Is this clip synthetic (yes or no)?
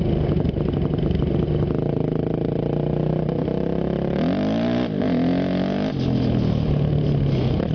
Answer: no